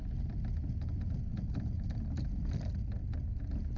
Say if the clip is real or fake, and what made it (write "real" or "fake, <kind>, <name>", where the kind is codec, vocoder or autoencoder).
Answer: real